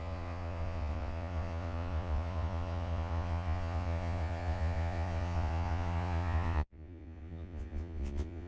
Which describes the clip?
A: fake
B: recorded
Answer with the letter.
A